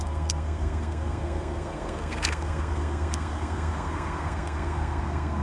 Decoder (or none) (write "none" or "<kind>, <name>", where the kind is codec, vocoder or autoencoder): codec, SNAC